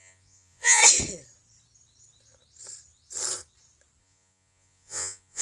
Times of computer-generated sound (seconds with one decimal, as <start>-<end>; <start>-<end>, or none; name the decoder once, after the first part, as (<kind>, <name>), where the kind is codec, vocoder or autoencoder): 0.0-0.8 (vocoder, Vocos); 4.0-5.4

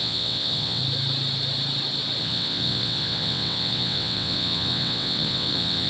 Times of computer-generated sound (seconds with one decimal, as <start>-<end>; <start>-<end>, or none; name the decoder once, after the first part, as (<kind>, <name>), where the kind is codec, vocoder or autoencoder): 0.0-0.8 (vocoder, WaveNeXt); 2.2-5.9

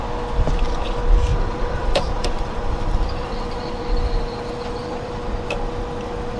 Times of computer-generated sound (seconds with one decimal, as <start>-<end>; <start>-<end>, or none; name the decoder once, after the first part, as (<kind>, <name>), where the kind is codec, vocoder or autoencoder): 1.3-5.1 (vocoder, BigVGAN v2)

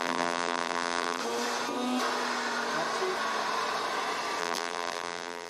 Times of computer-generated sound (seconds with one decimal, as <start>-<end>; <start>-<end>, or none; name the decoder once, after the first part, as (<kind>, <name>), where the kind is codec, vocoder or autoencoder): 0.0-1.2 (vocoder, BigVGAN v2); 4.4-5.5

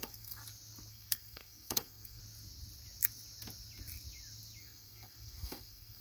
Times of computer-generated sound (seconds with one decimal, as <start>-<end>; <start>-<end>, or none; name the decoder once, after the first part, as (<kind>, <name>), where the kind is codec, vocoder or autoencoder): 0.0-0.4 (codec, SNAC); 0.9-2.2; 4.6-6.0

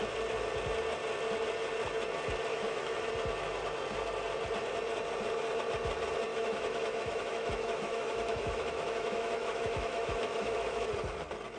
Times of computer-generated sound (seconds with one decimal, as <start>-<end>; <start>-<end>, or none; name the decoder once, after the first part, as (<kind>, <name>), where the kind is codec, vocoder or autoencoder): 2.5-3.1 (autoencoder, DAC-VAE); 6.3-10.9

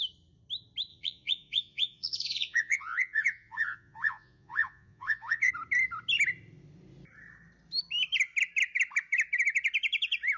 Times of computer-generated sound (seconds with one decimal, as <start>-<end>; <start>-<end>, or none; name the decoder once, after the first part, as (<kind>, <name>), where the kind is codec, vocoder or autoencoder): 0.9-5.5 (vocoder, Vocos)